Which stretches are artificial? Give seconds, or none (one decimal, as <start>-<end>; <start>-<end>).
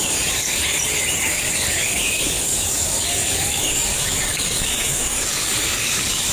0.0-0.6; 1.3-6.3